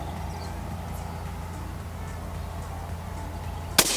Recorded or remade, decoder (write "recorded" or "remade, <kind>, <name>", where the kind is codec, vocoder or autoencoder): recorded